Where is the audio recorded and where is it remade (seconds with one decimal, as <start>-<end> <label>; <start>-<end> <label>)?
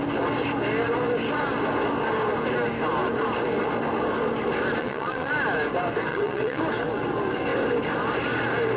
0.0-4.8 recorded; 4.8-5.3 remade; 5.3-6.1 recorded; 6.1-6.6 remade; 6.6-8.8 recorded